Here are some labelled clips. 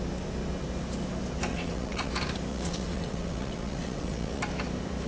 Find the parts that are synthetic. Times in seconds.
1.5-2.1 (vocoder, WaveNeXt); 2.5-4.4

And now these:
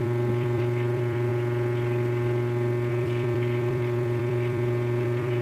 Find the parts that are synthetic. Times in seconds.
0.0-1.3 (vocoder, BigVGAN v2); 2.9-5.4